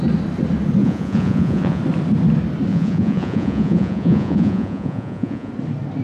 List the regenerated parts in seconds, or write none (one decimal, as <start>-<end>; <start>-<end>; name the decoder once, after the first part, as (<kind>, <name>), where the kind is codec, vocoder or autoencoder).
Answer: 0.8-1.8 (vocoder, Vocos); 2.7-5.5

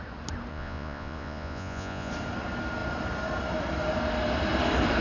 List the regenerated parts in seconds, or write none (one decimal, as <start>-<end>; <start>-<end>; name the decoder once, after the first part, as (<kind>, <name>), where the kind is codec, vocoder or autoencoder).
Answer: 0.5-2.1 (vocoder, Vocos)